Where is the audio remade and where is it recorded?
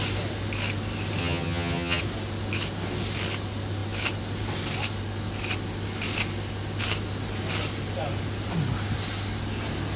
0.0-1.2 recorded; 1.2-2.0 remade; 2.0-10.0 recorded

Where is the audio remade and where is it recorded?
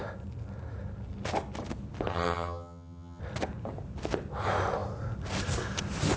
0.0-2.1 recorded; 2.1-3.2 remade; 3.2-6.2 recorded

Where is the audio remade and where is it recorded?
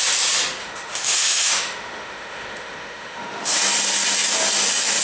0.0-0.6 recorded; 0.6-3.6 remade; 3.6-5.0 recorded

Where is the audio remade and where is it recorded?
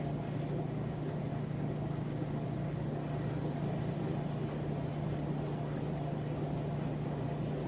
0.0-7.7 recorded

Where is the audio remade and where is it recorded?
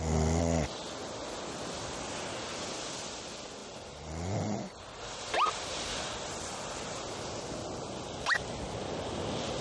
0.0-3.6 recorded; 3.6-7.3 remade; 7.3-9.6 recorded